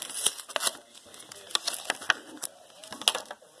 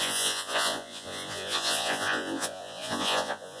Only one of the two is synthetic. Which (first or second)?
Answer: second